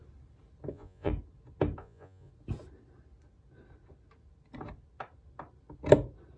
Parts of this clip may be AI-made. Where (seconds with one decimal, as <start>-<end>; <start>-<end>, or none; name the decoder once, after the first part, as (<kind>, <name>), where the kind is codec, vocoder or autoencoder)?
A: 0.7-1.1 (vocoder, Vocos); 1.8-2.3